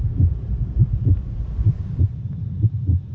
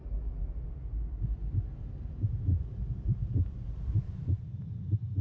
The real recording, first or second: second